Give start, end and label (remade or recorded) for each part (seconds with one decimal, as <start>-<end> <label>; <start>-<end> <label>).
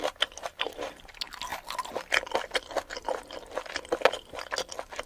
0.0-5.1 recorded